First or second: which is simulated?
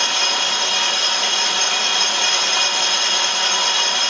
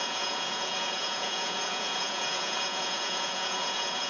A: second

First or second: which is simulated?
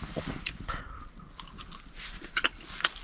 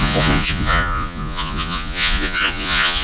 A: second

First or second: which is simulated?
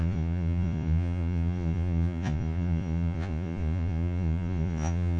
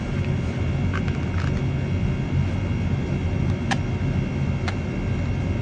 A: first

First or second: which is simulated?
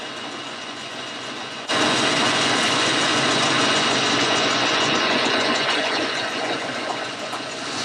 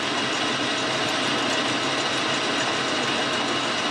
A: first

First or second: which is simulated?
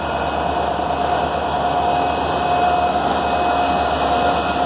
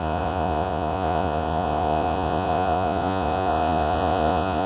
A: second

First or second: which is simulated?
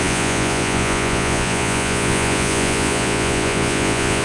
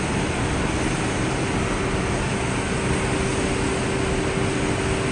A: first